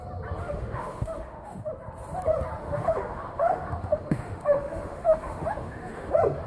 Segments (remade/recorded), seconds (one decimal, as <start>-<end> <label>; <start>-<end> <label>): 0.0-0.4 recorded; 0.4-1.7 remade; 1.7-2.6 recorded; 2.6-6.1 remade; 6.1-6.5 recorded